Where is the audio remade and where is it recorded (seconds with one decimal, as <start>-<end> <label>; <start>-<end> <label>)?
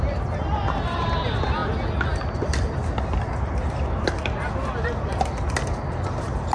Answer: 0.0-6.5 recorded